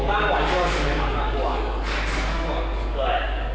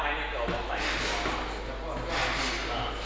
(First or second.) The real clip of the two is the second